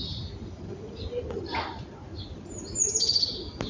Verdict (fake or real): real